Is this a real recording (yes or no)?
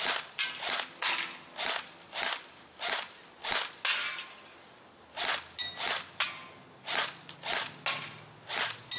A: yes